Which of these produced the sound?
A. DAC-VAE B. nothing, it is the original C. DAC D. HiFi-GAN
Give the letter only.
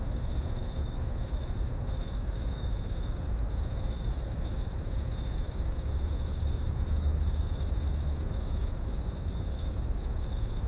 A